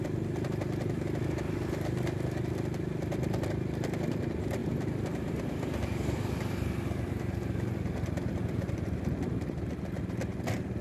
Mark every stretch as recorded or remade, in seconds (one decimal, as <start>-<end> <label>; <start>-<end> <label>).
0.0-10.8 recorded